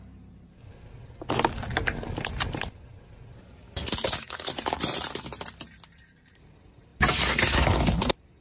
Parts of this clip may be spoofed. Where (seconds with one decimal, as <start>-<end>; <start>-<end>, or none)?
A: none